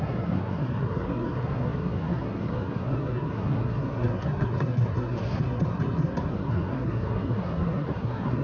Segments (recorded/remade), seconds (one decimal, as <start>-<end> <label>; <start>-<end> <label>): 0.0-8.4 remade

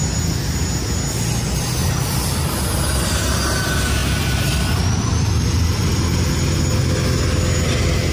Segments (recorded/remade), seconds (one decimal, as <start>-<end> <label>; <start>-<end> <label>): 0.0-8.1 recorded